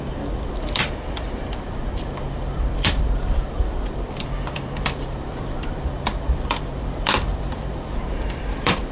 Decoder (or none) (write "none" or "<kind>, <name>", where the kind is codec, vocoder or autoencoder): vocoder, BigVGAN v2